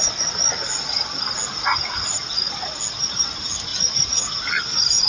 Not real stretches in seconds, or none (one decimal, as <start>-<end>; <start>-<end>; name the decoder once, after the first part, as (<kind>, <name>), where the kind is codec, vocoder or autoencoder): 1.7-2.5 (vocoder, Vocos); 3.7-4.4